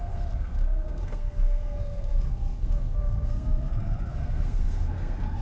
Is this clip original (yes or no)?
no